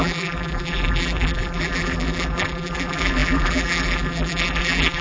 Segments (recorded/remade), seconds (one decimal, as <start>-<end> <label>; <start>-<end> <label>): 0.0-5.0 remade